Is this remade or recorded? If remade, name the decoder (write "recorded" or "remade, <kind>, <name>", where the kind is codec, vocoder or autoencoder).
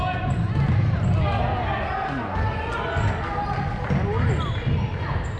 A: recorded